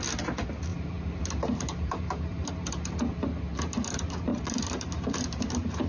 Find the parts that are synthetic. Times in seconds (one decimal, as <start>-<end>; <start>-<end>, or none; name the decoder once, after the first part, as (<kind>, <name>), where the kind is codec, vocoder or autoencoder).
0.7-2.5 (vocoder, BigVGAN v2); 4.3-5.9